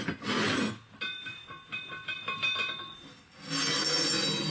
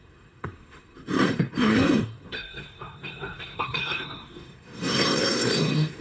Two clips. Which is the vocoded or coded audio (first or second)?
second